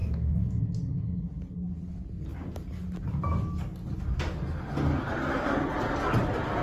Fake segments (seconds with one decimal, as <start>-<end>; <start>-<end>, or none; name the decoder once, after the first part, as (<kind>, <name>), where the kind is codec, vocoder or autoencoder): 0.0-0.6 (autoencoder, DAC-VAE)